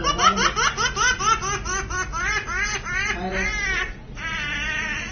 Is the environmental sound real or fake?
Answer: real